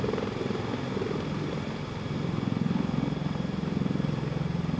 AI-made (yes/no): no